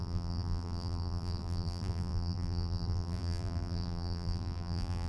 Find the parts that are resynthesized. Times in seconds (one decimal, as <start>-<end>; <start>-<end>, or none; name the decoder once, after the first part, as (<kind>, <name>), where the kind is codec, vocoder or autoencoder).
0.0-5.1 (vocoder, BigVGAN v2)